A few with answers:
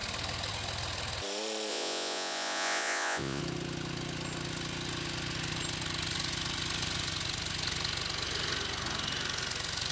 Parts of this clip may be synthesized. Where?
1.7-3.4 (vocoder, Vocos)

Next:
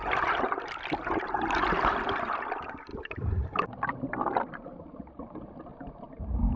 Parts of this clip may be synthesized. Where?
2.9-3.9 (vocoder, BigVGAN v2); 5.7-6.6

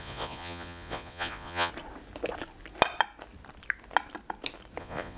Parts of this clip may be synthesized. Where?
0.0-1.7 (vocoder, Vocos); 4.8-5.2